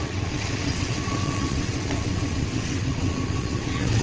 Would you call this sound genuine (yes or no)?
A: no